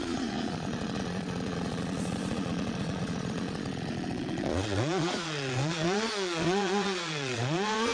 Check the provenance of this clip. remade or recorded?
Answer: remade